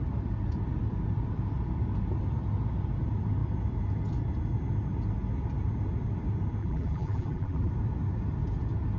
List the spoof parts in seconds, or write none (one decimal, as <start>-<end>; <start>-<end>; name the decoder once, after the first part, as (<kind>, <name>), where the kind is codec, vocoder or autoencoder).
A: 6.6-7.7 (vocoder, BigVGAN v2)